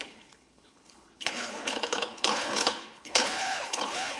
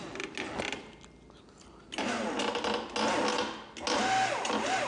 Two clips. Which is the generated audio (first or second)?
first